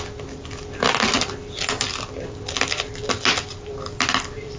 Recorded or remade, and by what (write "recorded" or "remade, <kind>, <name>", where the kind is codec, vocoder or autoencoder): recorded